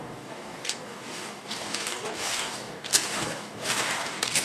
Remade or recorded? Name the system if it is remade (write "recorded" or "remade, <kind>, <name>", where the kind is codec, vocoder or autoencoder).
remade, codec, DAC